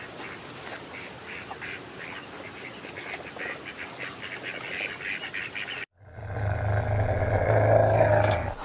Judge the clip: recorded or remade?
recorded